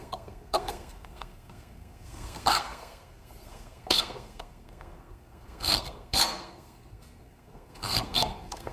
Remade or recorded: remade